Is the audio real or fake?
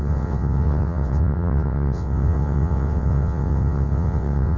fake